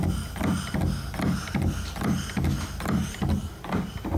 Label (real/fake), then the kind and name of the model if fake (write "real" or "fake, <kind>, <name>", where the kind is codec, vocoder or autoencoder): real